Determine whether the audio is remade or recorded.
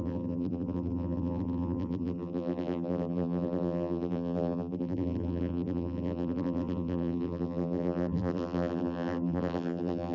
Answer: remade